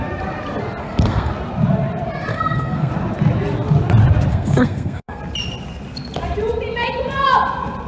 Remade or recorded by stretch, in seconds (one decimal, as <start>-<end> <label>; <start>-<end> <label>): 0.0-0.8 recorded; 0.8-1.3 remade; 1.3-2.3 recorded; 2.3-2.9 remade; 2.9-4.3 recorded; 4.3-5.2 remade; 5.2-7.9 recorded